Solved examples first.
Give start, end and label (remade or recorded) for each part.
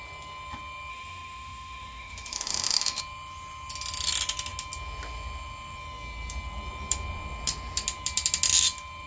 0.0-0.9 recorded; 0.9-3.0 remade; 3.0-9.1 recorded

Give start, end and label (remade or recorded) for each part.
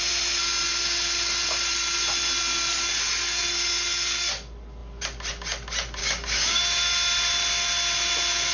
0.0-6.0 recorded; 6.0-6.6 remade; 6.6-8.5 recorded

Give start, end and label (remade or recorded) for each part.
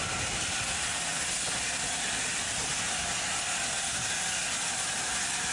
0.0-5.5 recorded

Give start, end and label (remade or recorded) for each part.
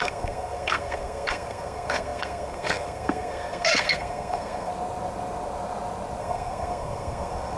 0.0-4.7 remade; 4.7-6.2 recorded; 6.2-7.6 remade